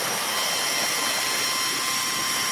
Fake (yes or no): no